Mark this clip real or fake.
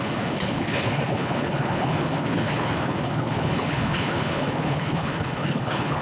fake